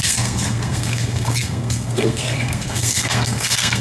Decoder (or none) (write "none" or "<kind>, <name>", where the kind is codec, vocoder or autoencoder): codec, SNAC